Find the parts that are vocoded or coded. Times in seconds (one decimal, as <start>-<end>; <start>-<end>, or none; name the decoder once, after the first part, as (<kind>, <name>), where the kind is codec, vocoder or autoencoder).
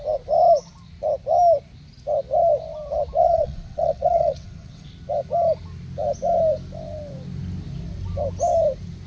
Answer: 3.2-4.9 (vocoder, WaveNeXt)